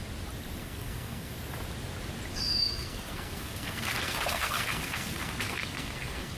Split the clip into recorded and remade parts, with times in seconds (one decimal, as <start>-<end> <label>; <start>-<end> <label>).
0.0-0.6 recorded; 0.6-1.3 remade; 1.3-2.3 recorded; 2.3-6.4 remade